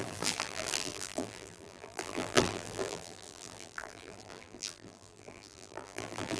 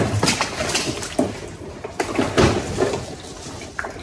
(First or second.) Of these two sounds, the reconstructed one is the first